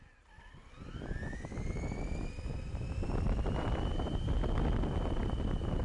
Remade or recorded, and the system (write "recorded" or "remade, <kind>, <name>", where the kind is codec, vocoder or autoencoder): recorded